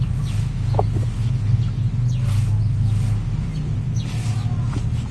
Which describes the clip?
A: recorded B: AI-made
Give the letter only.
A